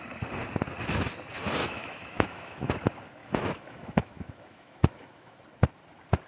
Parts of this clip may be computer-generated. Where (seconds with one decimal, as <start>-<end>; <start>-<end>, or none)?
1.6-2.7; 3.2-5.4